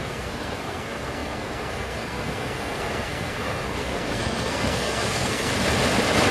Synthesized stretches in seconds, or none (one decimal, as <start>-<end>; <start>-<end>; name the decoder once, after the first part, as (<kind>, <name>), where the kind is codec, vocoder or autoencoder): 0.0-5.5 (codec, SNAC)